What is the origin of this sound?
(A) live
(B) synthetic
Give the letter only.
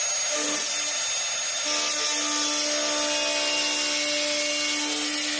A